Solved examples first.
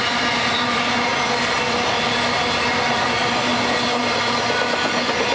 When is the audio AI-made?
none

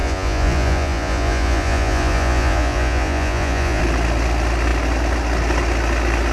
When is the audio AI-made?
0.0-3.8 (vocoder, Vocos)

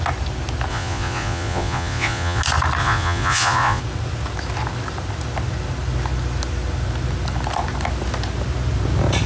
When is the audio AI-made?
0.7-2.4 (vocoder, Vocos); 2.8-3.8

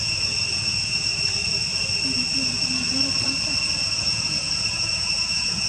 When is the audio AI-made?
0.0-1.1 (vocoder, Vocos); 4.0-5.7